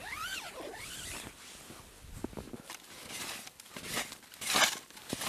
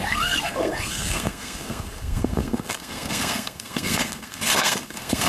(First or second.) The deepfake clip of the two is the second